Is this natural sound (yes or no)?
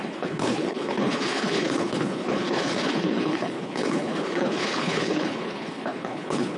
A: no